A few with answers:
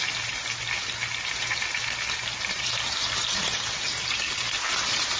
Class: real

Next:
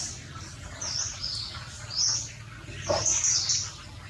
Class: real